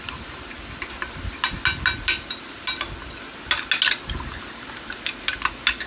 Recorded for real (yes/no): yes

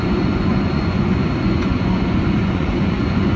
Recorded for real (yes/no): no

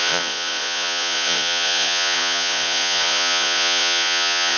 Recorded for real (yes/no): no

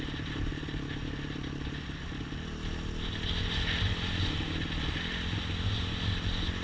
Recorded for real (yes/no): yes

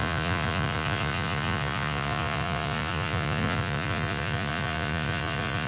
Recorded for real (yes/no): no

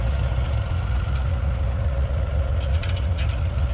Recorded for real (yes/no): no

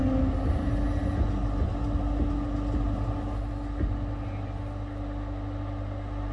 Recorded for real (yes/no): yes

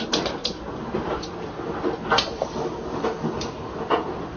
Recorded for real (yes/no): yes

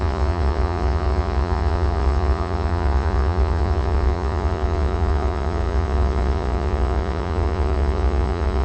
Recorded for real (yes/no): no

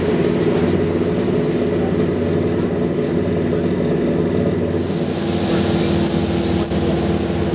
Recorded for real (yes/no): yes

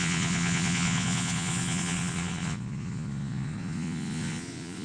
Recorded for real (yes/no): no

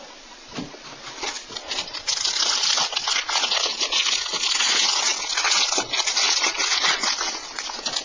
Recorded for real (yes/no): no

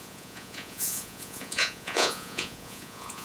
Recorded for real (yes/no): no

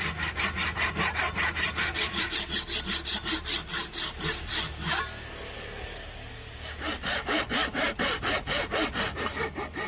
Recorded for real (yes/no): yes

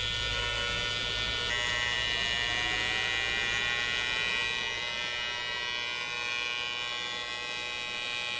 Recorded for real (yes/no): yes